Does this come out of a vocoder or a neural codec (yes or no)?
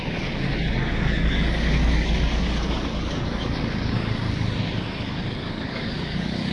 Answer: yes